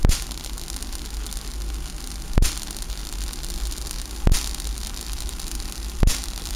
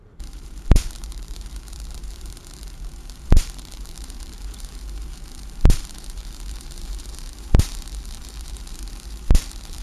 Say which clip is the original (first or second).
first